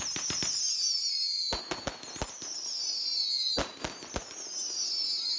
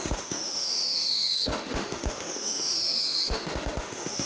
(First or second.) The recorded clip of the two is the first